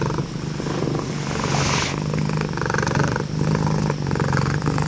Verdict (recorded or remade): recorded